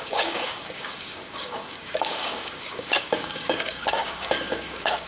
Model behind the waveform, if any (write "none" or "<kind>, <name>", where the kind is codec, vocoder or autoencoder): codec, DAC